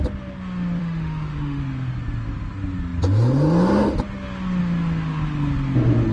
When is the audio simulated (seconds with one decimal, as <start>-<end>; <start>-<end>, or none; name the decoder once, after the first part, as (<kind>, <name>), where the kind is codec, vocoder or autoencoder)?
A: 0.8-1.6 (autoencoder, DAC-VAE)